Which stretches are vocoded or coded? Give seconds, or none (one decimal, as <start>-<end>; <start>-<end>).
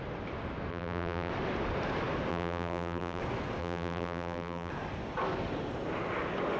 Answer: 0.7-1.3; 2.3-3.2; 3.6-4.7